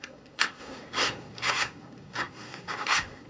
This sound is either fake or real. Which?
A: fake